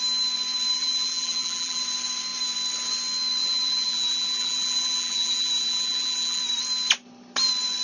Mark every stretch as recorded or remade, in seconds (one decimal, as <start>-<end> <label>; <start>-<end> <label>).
0.0-0.7 recorded; 0.7-1.8 remade; 1.8-3.4 recorded; 3.4-6.4 remade; 6.4-7.8 recorded